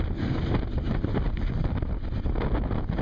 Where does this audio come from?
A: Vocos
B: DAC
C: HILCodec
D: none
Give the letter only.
D